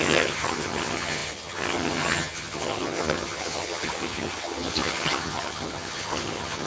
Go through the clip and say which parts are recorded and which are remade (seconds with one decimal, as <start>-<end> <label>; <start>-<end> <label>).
0.0-6.7 remade